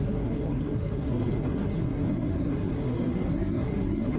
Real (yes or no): no